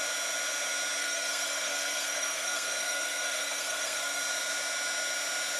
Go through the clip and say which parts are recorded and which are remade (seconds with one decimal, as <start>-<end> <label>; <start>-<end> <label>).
0.0-1.0 recorded; 1.0-4.2 remade; 4.2-5.6 recorded